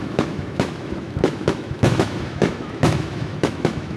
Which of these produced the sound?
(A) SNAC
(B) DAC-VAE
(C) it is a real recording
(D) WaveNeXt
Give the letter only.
B